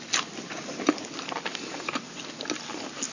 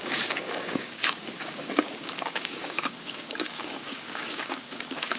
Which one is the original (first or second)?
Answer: first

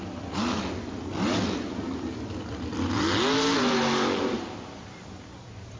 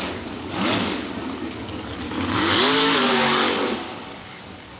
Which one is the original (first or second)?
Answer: first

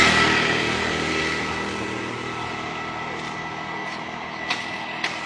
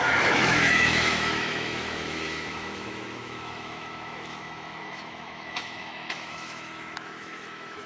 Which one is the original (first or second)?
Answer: first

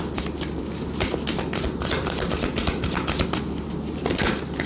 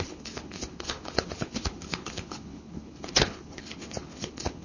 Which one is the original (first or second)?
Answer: first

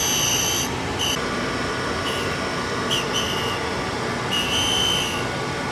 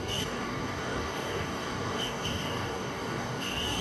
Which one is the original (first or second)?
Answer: first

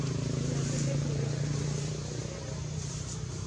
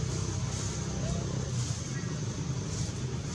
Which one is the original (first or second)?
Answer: second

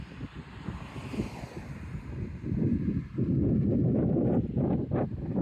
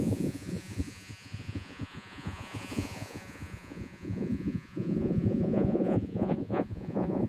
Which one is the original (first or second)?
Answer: first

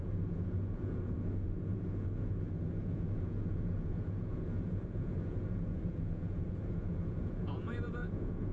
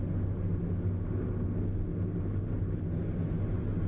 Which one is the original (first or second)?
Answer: second